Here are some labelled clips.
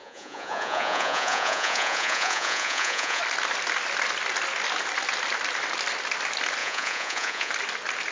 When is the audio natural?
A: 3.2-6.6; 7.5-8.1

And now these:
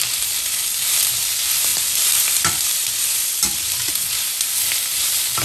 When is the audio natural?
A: 0.0-1.7; 3.9-5.4

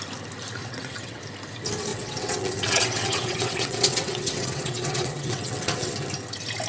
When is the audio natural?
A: 0.0-0.6; 1.2-1.9; 5.9-6.7

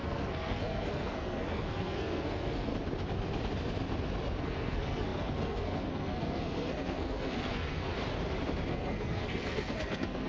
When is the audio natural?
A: 2.7-4.4; 7.9-8.7

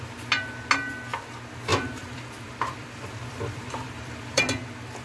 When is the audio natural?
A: 0.0-1.7; 4.4-5.0

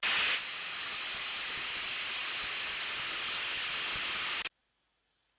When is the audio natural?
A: 0.0-5.4

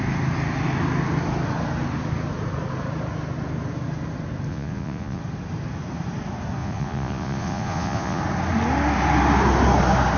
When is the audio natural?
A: 0.0-4.5; 5.2-6.6; 8.2-10.2